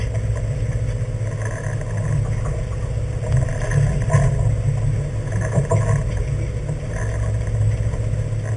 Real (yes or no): yes